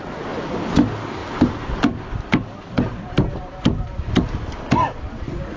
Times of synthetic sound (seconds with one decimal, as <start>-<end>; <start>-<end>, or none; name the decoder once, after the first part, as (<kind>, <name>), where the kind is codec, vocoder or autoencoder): 1.2-4.6 (vocoder, BigVGAN v2)

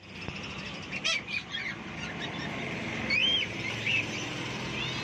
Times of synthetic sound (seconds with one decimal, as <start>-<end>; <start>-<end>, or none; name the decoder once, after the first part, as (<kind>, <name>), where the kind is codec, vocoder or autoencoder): 3.2-4.0 (vocoder, BigVGAN v2)

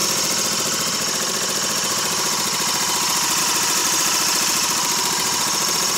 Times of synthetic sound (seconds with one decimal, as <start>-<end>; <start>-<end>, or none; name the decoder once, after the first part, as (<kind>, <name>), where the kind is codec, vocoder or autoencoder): 3.8-6.0 (vocoder, BigVGAN v2)

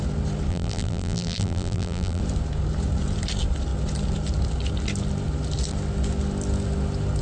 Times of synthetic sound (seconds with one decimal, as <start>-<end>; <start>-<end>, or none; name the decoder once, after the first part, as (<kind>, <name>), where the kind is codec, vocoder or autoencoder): 0.5-2.2 (vocoder, BigVGAN v2)

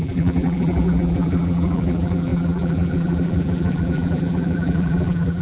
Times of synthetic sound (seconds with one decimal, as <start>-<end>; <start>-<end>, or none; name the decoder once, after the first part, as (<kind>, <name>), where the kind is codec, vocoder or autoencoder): 0.0-5.4 (vocoder, BigVGAN v2)